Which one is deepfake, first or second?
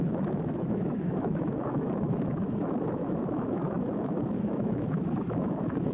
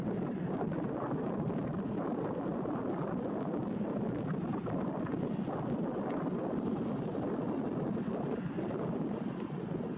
first